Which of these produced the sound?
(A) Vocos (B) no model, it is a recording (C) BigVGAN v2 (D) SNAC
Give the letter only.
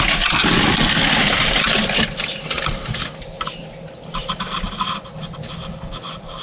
B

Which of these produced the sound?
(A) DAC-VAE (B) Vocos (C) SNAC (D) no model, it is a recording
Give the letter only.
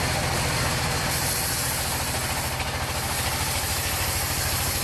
D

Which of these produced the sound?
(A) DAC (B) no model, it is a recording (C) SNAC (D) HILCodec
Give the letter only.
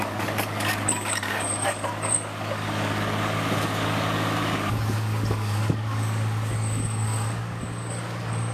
A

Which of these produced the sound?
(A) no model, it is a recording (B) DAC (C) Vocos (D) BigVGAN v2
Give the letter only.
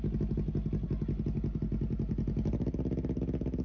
A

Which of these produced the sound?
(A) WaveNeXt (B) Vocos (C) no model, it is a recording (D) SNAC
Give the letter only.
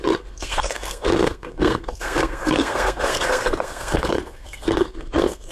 D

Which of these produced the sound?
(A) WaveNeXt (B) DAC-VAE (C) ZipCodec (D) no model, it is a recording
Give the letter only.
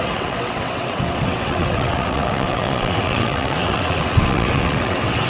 A